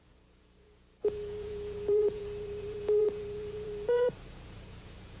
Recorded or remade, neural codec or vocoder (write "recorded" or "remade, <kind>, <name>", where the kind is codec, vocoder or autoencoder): remade, vocoder, Vocos